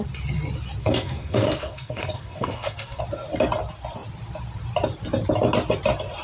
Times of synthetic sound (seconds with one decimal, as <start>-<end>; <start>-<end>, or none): 0.8-3.0

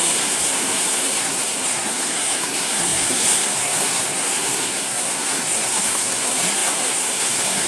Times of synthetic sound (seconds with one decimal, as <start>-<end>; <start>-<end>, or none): 0.0-7.7

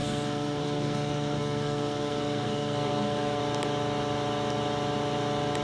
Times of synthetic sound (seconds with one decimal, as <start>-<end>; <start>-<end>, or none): 0.0-3.4

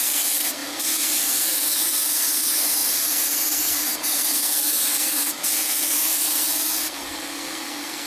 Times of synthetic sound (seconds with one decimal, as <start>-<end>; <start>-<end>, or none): 0.0-8.1